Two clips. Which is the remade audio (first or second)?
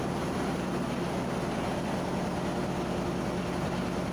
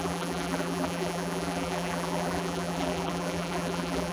second